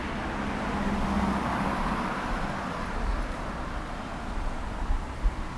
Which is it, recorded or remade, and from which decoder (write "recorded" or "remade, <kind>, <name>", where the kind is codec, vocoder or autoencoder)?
recorded